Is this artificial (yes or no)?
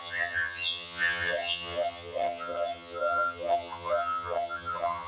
yes